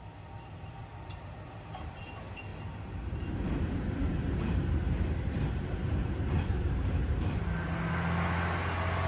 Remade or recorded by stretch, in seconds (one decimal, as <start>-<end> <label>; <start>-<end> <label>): 0.0-0.8 recorded; 0.8-2.0 remade; 2.0-2.5 recorded; 2.5-7.2 remade; 7.2-9.1 recorded